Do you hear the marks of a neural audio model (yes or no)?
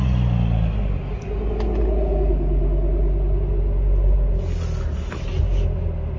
no